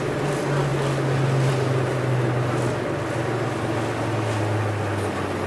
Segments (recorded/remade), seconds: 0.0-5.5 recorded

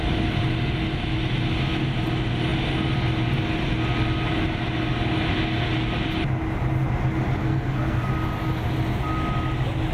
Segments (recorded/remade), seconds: 0.0-7.4 recorded; 7.4-8.1 remade; 8.1-9.9 recorded